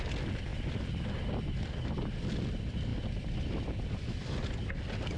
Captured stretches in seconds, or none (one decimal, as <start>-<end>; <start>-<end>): 0.0-5.2